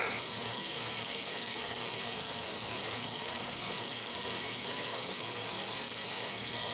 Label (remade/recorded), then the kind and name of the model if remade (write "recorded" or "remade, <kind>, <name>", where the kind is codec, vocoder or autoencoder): remade, codec, SNAC